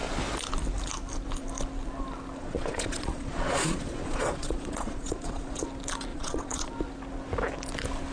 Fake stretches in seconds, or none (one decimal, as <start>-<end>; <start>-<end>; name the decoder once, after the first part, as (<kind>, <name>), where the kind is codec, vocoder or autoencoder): 2.4-5.6 (vocoder, Vocos); 6.1-6.7